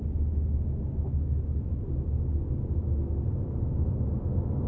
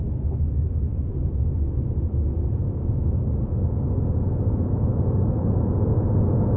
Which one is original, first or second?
first